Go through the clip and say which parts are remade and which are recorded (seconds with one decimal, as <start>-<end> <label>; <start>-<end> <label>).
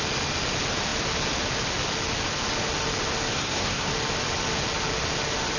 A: 0.0-3.3 recorded; 3.3-3.9 remade; 3.9-5.6 recorded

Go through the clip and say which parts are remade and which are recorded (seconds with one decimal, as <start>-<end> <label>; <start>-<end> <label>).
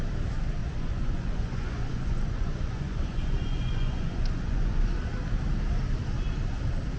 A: 0.0-0.6 recorded; 0.6-4.8 remade; 4.8-7.0 recorded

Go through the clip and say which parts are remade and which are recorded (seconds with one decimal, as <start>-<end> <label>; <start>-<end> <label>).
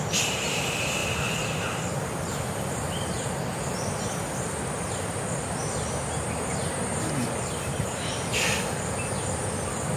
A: 0.0-10.0 recorded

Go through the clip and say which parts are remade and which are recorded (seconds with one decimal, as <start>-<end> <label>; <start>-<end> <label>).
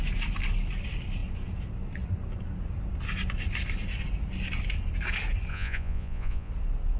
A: 0.0-5.5 recorded; 5.5-6.5 remade; 6.5-7.0 recorded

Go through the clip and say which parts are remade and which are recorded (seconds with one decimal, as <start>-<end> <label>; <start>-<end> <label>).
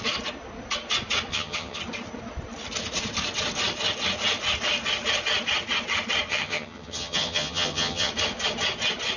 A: 0.0-1.3 recorded; 1.3-1.8 remade; 1.8-6.3 recorded; 6.3-8.1 remade; 8.1-9.2 recorded